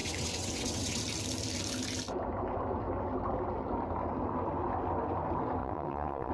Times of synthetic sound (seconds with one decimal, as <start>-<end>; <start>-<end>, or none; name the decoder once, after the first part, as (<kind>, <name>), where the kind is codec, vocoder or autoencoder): 0.0-1.0 (vocoder, WaveNeXt); 5.6-6.3